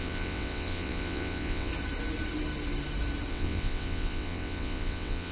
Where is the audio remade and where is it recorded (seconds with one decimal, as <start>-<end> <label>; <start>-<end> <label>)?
0.0-1.7 remade; 1.7-3.3 recorded; 3.3-5.3 remade